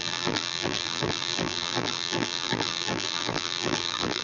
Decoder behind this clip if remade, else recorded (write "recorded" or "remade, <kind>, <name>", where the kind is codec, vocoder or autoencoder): remade, vocoder, BigVGAN v2